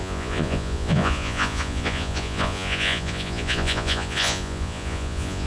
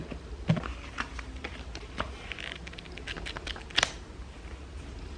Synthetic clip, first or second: first